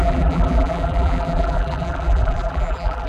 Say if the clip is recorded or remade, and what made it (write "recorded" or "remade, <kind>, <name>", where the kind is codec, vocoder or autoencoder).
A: remade, vocoder, BigVGAN v2